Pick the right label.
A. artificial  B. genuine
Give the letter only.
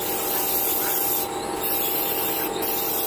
B